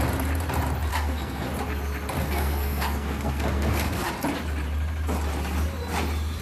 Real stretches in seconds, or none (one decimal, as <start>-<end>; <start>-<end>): 0.0-0.9; 1.5-2.2; 4.1-6.4